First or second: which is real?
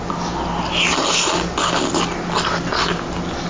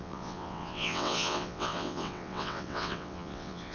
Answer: first